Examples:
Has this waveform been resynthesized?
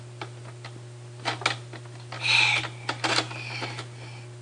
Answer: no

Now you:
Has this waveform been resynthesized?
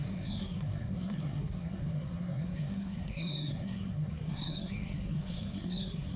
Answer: yes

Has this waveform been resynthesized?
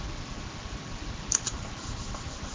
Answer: no